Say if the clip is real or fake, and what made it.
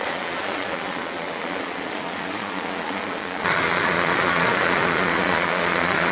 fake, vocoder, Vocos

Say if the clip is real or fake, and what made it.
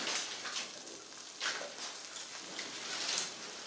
real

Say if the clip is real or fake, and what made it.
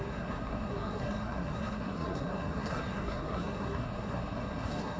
fake, codec, SNAC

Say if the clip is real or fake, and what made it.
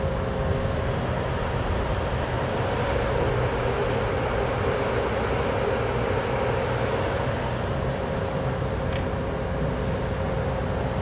real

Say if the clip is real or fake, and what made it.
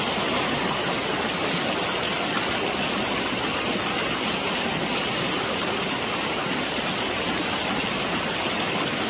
real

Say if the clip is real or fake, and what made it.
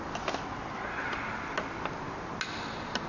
real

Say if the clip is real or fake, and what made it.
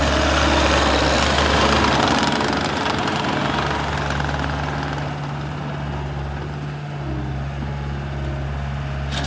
real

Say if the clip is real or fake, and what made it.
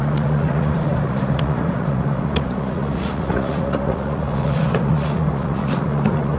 fake, vocoder, Vocos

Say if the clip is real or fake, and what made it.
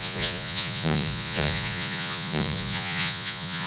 fake, vocoder, Vocos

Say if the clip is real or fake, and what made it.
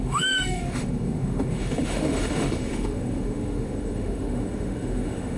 fake, autoencoder, DAC-VAE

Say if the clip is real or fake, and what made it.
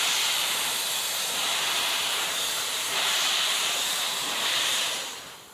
fake, vocoder, BigVGAN v2